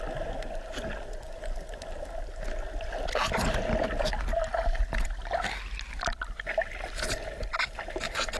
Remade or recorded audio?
recorded